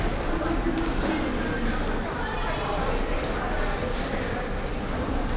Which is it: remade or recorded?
recorded